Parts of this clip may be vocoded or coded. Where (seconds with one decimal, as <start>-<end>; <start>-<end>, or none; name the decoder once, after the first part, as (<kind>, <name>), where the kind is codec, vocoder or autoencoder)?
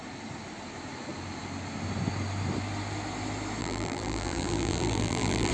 3.6-5.5 (vocoder, BigVGAN v2)